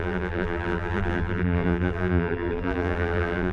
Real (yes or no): no